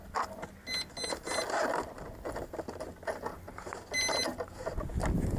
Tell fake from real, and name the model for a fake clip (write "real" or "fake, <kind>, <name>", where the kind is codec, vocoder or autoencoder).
real